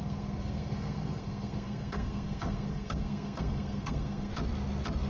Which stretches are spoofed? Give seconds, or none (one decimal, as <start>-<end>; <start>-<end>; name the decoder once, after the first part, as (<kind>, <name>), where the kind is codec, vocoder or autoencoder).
0.0-4.3 (codec, SNAC)